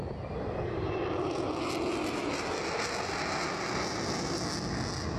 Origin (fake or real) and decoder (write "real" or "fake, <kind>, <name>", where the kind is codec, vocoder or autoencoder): real